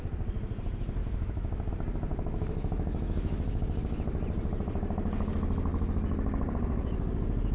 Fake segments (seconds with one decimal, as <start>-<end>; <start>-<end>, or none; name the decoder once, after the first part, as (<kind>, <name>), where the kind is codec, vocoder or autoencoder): 1.0-1.7 (autoencoder, DAC-VAE); 2.1-3.6